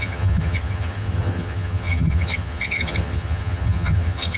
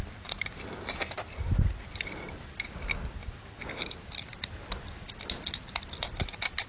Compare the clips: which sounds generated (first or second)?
first